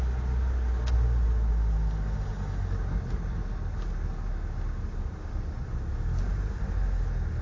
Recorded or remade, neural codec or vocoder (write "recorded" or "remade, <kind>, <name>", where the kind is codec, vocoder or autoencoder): recorded